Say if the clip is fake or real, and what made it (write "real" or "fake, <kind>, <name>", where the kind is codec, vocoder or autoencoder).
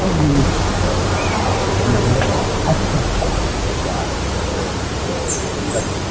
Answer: fake, vocoder, BigVGAN v2